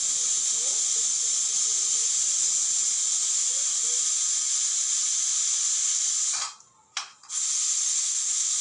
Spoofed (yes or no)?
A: no